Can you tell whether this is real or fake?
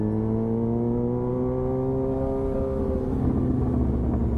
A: real